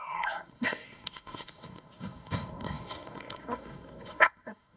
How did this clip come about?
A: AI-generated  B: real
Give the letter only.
A